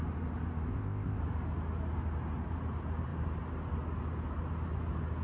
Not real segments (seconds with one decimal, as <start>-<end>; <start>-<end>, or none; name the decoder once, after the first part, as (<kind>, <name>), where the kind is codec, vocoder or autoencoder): 0.7-1.2 (codec, ZipCodec)